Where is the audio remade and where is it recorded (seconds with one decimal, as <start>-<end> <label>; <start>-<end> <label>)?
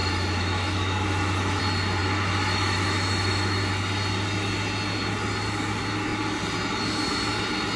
0.0-1.6 remade; 1.6-2.0 recorded; 2.0-3.6 remade; 3.6-7.8 recorded